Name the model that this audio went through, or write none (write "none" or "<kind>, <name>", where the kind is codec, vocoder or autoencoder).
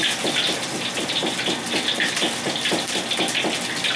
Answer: none